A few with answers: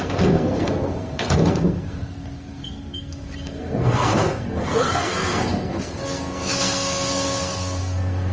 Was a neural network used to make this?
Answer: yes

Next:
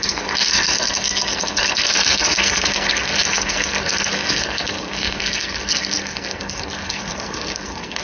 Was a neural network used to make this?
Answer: yes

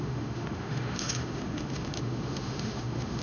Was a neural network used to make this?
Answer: yes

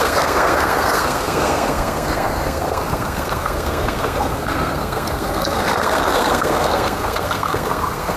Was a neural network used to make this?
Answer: yes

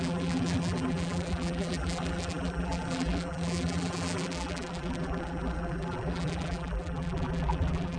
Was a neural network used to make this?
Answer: yes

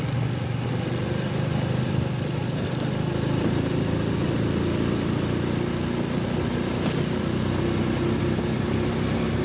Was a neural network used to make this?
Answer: no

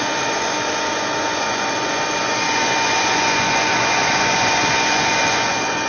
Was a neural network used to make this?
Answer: yes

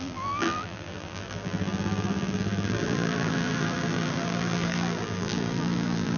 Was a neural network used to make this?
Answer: yes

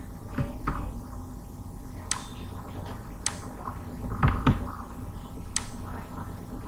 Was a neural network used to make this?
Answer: no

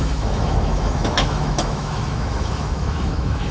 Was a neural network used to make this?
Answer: yes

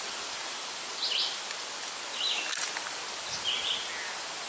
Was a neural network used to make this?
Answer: no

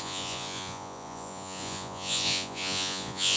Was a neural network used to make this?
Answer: yes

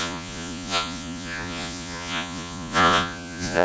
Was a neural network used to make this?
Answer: yes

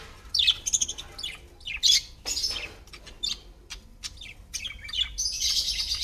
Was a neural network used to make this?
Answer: no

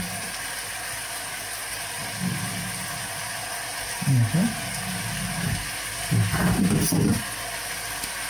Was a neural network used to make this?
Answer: no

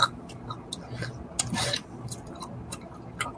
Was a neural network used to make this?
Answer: no